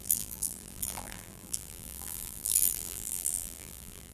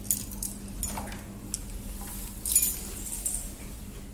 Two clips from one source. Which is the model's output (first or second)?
first